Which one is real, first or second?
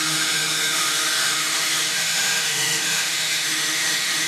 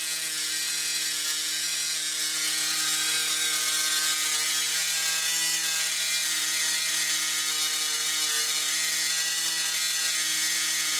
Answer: second